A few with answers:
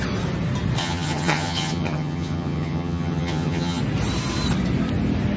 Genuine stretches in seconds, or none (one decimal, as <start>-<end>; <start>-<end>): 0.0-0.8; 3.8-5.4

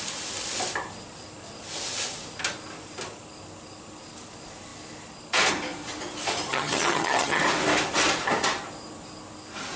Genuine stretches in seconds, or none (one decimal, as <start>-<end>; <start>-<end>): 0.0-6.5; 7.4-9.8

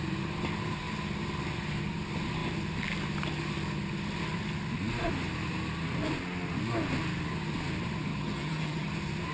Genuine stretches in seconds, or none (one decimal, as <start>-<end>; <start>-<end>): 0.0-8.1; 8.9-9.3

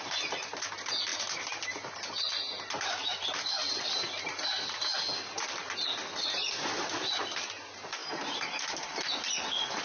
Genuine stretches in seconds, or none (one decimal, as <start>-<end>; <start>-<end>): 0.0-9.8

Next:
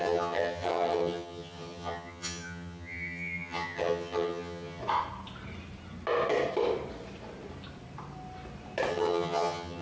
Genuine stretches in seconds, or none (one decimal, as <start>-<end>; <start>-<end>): 4.8-8.9